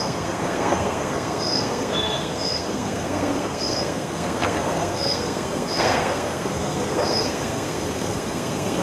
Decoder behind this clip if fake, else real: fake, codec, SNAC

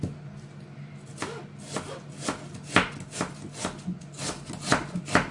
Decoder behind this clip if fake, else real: real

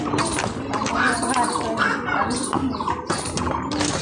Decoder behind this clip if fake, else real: real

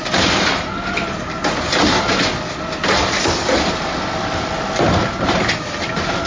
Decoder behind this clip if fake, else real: real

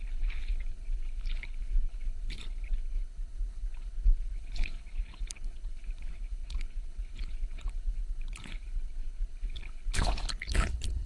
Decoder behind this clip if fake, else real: fake, codec, HILCodec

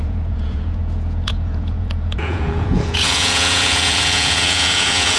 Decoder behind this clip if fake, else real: fake, vocoder, Vocos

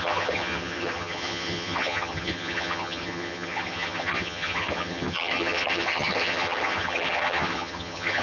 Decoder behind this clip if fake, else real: fake, vocoder, HiFi-GAN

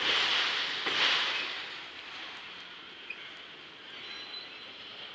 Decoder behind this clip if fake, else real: real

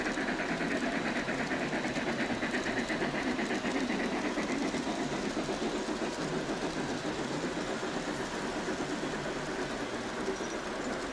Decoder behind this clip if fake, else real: real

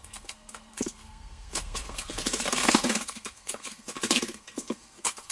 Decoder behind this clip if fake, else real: fake, codec, SNAC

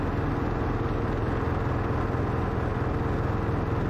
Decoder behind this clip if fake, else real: real